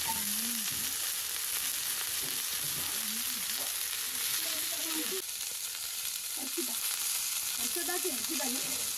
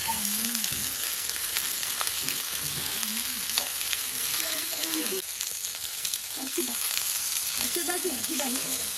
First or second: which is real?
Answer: first